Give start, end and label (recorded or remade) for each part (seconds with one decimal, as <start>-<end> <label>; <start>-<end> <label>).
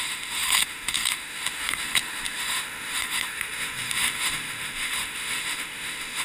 0.0-6.2 remade